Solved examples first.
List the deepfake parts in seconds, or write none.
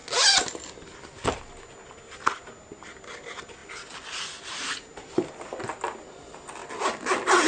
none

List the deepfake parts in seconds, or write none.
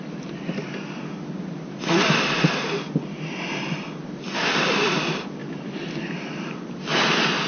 none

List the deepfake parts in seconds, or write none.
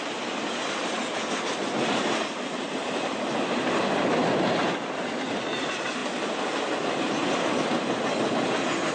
none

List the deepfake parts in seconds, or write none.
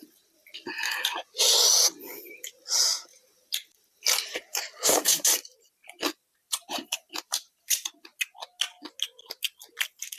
3.1-8.2 (vocoder, BigVGAN v2)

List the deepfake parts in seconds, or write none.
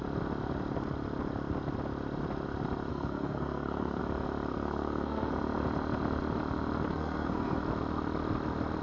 2.9-4.0 (codec, SNAC); 4.5-5.3; 6.9-7.6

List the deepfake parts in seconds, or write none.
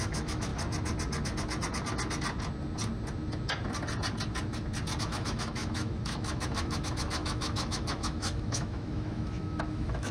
0.0-0.5 (autoencoder, DAC-VAE); 5.0-10.1